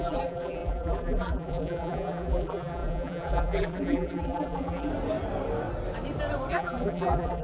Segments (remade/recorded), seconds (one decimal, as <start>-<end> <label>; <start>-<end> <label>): 0.0-4.9 remade; 4.9-6.5 recorded; 6.5-7.4 remade